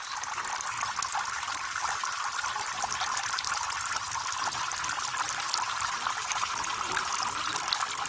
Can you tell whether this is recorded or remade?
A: recorded